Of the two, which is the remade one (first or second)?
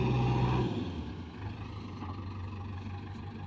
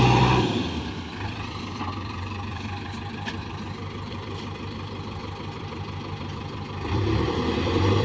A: second